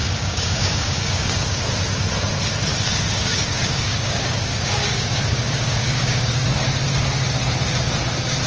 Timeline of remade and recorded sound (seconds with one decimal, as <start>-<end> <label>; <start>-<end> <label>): 0.0-1.6 remade; 1.6-2.7 recorded; 2.7-6.6 remade; 6.6-8.5 recorded